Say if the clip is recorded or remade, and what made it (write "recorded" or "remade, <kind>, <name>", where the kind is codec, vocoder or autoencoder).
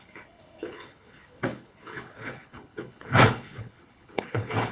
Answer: remade, codec, HILCodec